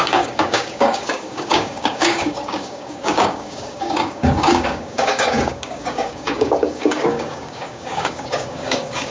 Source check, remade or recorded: remade